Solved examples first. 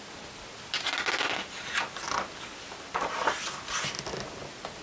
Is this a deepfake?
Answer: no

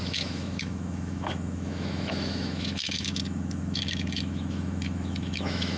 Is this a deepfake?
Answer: yes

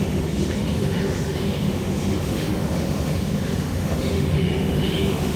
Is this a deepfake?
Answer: yes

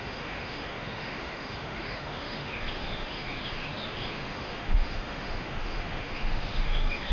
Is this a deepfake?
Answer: yes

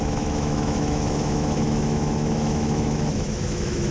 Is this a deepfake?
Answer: yes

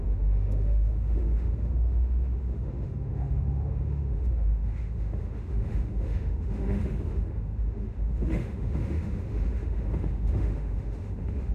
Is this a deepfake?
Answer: yes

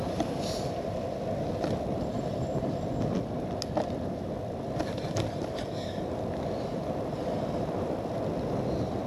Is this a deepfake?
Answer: no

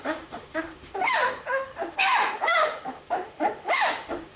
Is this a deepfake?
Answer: yes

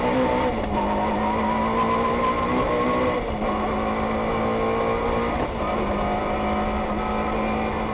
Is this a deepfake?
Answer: no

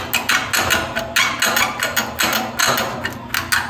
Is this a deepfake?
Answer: no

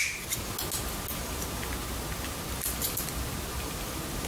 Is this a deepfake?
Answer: no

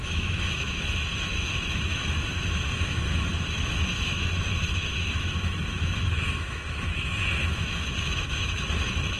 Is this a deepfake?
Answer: yes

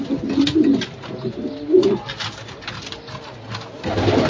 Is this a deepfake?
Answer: no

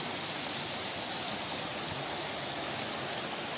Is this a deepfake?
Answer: no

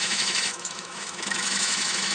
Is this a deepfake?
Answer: yes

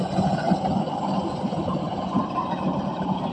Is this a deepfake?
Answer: no